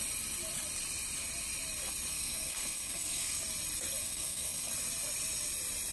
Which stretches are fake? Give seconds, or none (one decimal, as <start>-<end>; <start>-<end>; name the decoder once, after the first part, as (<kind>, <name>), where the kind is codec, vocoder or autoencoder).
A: 2.1-3.4 (codec, SNAC); 4.0-4.7